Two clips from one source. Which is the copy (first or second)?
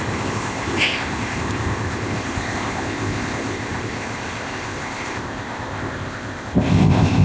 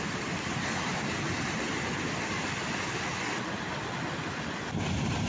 first